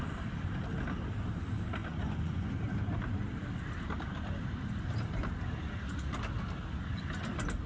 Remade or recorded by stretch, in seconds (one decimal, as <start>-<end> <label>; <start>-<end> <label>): 0.0-1.8 recorded; 1.8-2.5 remade; 2.5-7.7 recorded